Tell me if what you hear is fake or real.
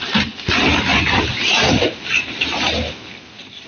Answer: real